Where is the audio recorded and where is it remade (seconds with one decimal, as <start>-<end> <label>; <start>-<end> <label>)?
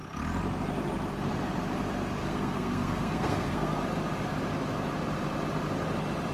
0.0-2.2 recorded; 2.2-3.8 remade; 3.8-6.3 recorded